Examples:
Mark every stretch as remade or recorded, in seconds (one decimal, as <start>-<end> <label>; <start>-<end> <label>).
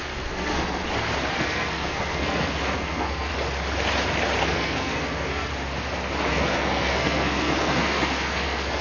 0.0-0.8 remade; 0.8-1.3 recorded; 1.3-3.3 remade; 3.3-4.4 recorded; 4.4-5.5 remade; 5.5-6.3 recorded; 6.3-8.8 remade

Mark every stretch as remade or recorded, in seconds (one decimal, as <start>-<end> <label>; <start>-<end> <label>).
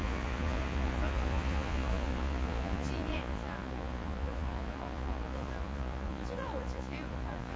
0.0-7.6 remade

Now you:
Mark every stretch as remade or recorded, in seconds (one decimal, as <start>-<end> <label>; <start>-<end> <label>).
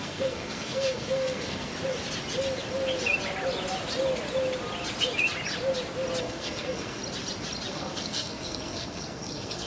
0.0-1.7 remade; 1.7-6.2 recorded; 6.2-7.0 remade; 7.0-7.7 recorded; 7.7-9.7 remade